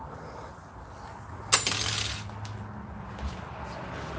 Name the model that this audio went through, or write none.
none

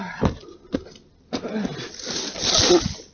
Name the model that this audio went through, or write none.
none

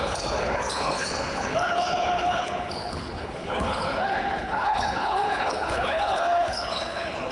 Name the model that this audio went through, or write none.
codec, HILCodec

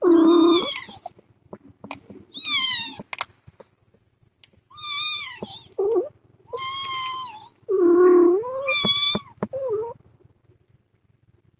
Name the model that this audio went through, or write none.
none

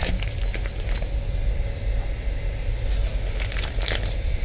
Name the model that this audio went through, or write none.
vocoder, BigVGAN v2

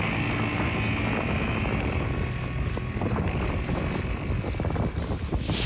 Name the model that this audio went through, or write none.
none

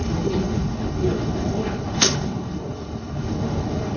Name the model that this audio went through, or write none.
codec, HILCodec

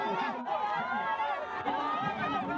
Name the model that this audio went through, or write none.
none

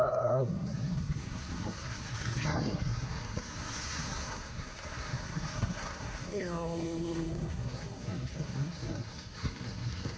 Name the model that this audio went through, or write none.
codec, SNAC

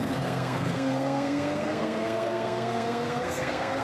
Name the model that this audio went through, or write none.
codec, SNAC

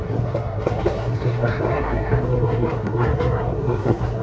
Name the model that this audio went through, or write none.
codec, SNAC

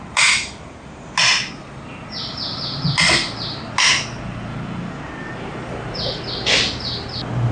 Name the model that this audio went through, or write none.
none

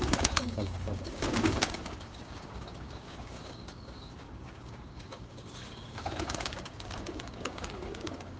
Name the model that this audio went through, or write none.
codec, DAC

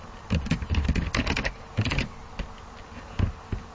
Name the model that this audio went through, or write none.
none